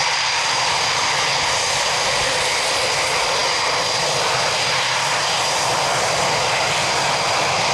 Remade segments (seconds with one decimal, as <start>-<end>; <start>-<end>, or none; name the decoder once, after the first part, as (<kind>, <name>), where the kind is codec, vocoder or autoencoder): 0.0-2.7 (vocoder, BigVGAN v2); 3.4-4.0